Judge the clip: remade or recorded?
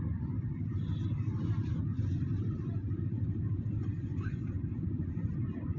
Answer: remade